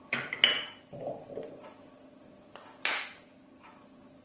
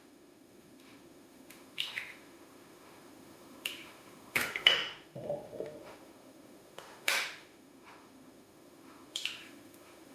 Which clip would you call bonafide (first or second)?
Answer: first